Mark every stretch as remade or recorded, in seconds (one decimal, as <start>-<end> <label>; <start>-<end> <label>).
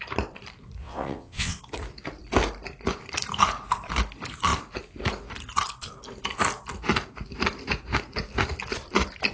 0.0-0.8 recorded; 0.8-1.6 remade; 1.6-9.3 recorded